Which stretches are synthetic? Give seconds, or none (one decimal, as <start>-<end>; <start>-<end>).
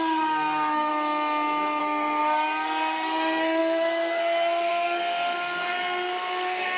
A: 0.0-0.9; 1.8-6.8